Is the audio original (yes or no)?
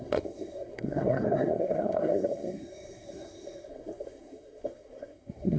no